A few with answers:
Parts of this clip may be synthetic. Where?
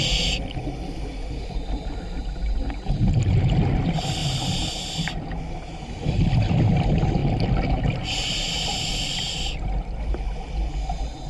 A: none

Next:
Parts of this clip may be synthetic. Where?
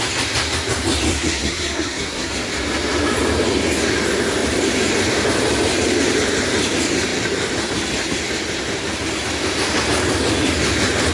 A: 1.1-2.3 (codec, SNAC)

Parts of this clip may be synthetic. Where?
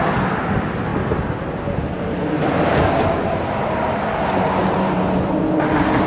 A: none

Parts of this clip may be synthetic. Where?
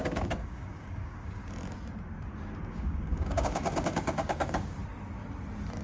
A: 0.0-1.4 (codec, DAC); 2.7-4.8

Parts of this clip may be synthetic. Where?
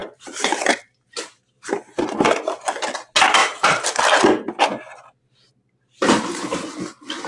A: 0.0-2.0 (vocoder, BigVGAN v2); 3.4-4.0; 5.6-6.6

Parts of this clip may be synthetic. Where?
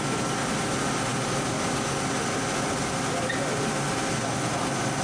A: none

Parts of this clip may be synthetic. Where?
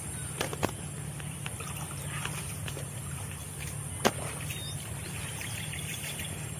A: 0.0-3.4 (vocoder, BigVGAN v2); 5.2-6.6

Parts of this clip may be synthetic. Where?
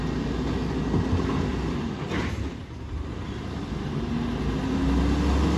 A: 1.5-4.1 (vocoder, BigVGAN v2)